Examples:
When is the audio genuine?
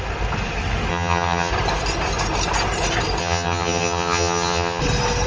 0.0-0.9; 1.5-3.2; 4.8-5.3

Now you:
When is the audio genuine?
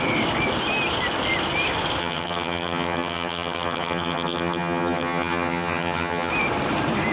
0.0-2.0; 6.3-7.1